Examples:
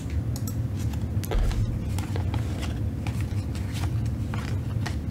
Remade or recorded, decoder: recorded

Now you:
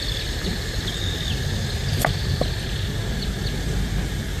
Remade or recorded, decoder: recorded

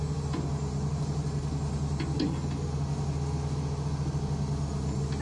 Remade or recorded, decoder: recorded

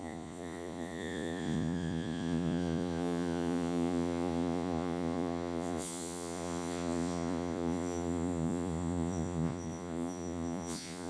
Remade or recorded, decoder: remade, vocoder, Vocos